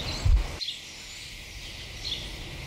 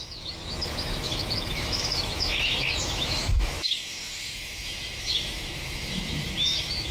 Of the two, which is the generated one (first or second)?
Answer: second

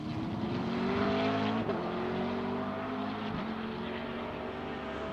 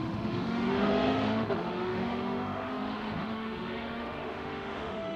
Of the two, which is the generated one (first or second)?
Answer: second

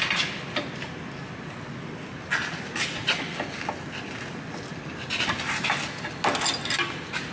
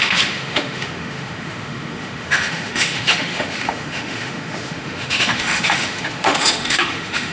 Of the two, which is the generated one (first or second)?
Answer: second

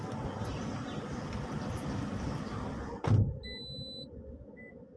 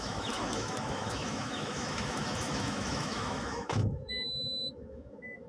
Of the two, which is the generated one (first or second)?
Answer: second